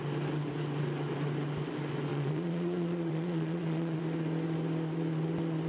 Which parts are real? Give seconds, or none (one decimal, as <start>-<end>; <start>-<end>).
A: 0.0-2.1; 4.0-5.7